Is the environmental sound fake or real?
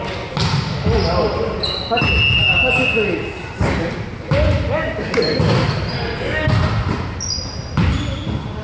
real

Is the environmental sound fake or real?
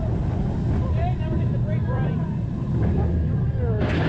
real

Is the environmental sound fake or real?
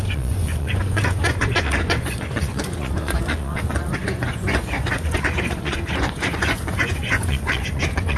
fake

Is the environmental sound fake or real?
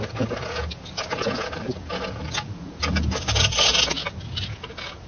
fake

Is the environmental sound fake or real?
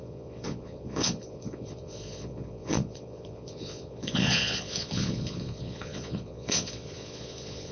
fake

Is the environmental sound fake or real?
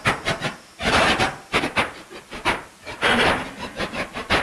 real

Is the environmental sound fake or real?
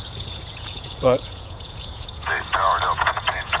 fake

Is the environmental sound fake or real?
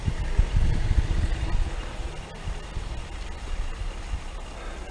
real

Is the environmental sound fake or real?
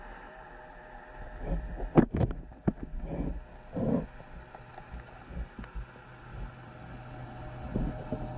real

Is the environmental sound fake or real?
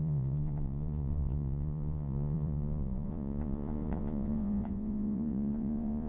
fake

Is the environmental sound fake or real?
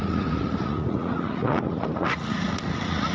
fake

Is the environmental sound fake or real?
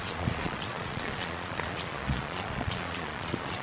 fake